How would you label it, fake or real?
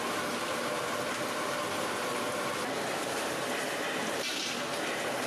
real